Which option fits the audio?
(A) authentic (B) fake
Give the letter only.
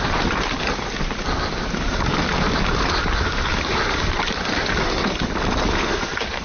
A